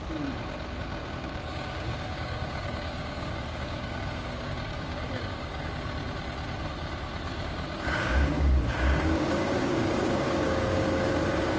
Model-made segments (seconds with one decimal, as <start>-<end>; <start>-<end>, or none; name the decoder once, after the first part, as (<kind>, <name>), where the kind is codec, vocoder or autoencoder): 1.0-5.7 (codec, DAC); 7.3-11.1